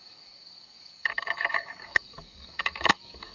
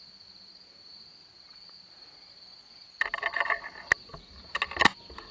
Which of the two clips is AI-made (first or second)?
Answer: first